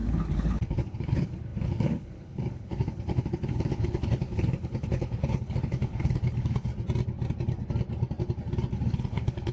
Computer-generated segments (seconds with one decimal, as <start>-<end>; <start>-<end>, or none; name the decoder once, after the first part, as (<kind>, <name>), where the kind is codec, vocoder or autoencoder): 0.0-6.7 (codec, HILCodec); 8.9-9.5